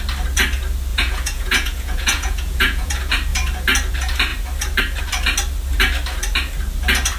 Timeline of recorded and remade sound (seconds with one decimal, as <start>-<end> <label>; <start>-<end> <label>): 0.0-0.9 recorded; 0.9-2.9 remade; 2.9-7.2 recorded